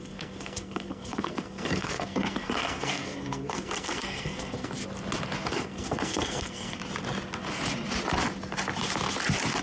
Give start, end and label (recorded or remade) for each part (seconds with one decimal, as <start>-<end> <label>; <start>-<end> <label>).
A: 0.0-4.8 remade; 4.8-5.5 recorded; 5.5-6.8 remade; 6.8-9.6 recorded